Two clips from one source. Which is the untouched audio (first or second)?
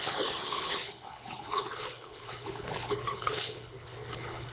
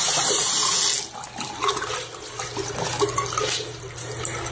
second